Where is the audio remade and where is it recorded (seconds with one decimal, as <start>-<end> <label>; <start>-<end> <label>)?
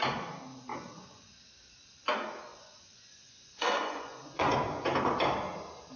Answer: 0.0-0.7 recorded; 0.7-1.3 remade; 1.3-2.5 recorded; 2.5-4.5 remade; 4.5-6.0 recorded